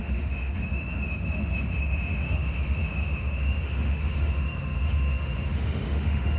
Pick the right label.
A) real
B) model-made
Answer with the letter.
B